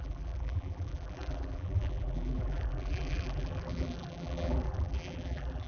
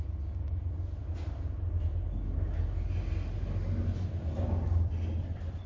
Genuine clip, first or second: second